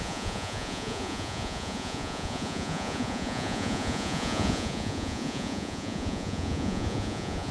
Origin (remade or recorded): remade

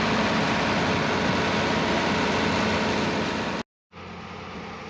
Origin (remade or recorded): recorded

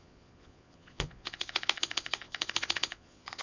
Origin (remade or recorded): remade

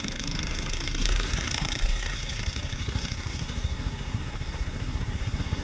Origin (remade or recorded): remade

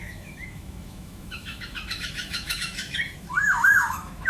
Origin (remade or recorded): remade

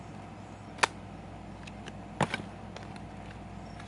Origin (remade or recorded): recorded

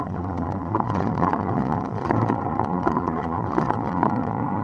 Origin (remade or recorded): remade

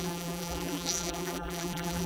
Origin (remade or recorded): remade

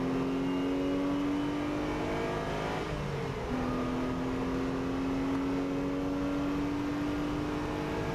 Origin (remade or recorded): recorded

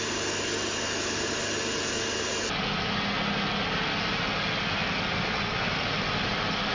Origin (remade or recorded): recorded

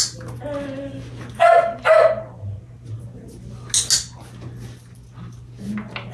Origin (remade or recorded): recorded